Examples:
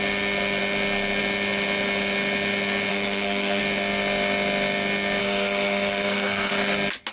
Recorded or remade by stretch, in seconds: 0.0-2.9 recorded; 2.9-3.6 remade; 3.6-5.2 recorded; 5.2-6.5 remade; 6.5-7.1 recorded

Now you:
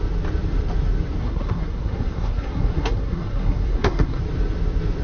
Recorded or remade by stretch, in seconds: 0.0-1.2 recorded; 1.2-4.2 remade; 4.2-5.0 recorded

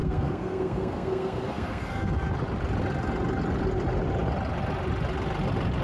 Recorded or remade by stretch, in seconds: 0.0-2.1 remade; 2.1-5.8 recorded

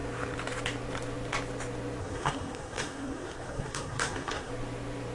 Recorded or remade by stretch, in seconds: 0.0-2.0 recorded; 2.0-4.5 remade; 4.5-5.1 recorded

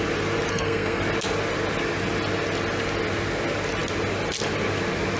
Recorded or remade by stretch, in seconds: 0.0-0.5 recorded; 0.5-1.0 remade; 1.0-5.2 recorded

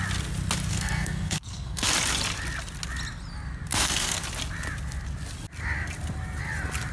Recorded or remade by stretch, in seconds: 0.0-0.7 recorded; 0.7-1.9 remade; 1.9-3.7 recorded; 3.7-4.2 remade; 4.2-6.9 recorded

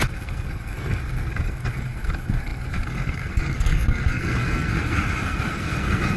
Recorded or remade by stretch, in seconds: 0.0-6.2 remade